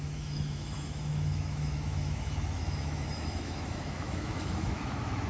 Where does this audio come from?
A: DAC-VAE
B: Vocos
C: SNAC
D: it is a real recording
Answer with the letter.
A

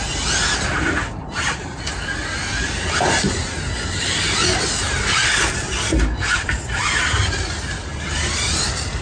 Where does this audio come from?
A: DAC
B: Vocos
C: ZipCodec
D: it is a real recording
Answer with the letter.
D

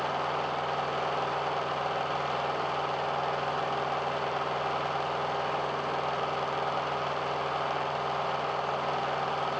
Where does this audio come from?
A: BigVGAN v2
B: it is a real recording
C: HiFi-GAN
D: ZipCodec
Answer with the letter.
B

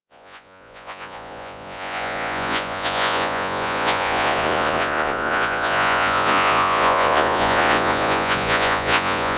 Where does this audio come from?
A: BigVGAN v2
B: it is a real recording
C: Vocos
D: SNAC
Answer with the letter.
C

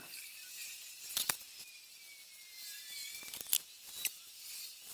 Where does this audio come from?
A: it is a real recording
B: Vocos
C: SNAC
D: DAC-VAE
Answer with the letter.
A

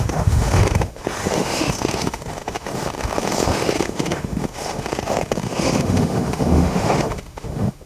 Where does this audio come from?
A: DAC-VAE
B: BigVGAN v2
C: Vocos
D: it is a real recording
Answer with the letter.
A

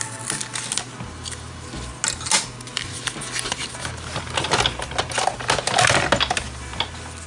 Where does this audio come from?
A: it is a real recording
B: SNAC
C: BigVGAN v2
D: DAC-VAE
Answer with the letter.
A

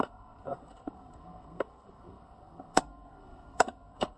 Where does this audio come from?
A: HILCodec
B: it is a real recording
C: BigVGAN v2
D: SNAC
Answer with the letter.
D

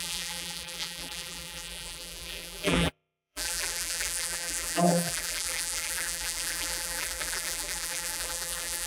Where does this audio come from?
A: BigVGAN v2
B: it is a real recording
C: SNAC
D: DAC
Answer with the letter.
A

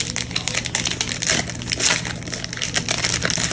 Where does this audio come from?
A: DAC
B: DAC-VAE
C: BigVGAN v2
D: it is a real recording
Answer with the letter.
D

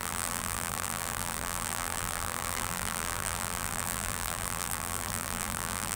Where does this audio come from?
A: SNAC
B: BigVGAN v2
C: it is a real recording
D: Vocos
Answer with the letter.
B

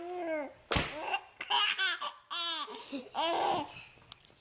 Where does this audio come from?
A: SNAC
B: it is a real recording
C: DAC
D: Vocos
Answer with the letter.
B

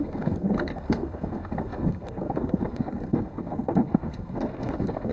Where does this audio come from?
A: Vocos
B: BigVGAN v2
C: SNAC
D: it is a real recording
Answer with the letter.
C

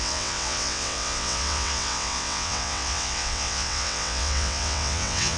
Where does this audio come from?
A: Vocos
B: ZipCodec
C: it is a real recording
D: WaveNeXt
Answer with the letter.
D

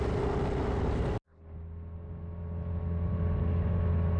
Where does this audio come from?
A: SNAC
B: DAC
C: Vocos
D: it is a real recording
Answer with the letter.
D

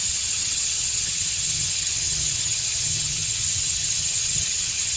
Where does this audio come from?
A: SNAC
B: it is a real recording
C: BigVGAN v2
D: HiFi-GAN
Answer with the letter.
D